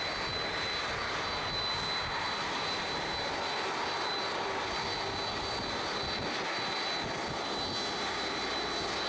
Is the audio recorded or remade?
recorded